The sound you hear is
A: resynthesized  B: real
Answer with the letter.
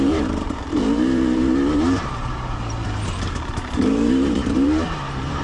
A